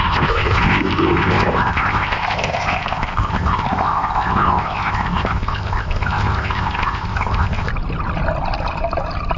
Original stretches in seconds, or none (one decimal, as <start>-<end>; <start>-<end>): 7.7-9.4